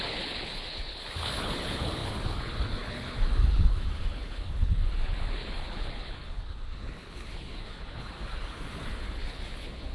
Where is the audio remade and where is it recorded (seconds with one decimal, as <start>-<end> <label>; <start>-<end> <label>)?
0.0-9.9 remade